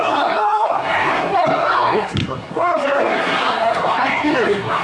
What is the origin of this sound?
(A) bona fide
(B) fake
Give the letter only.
B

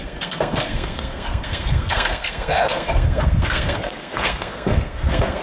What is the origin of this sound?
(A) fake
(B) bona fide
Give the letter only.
A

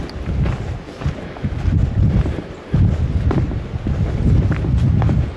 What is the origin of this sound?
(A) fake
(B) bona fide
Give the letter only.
B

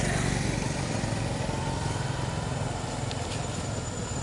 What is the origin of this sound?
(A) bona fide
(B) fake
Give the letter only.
A